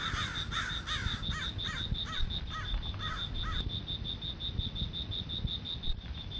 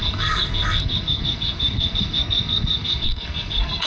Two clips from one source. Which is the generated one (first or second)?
second